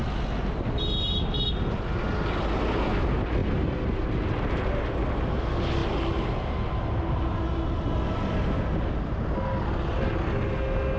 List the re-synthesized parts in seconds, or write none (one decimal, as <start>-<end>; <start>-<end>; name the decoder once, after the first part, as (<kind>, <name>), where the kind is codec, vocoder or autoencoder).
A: none